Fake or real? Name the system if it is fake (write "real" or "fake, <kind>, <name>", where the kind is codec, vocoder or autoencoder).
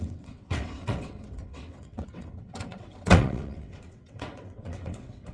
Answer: fake, vocoder, WaveNeXt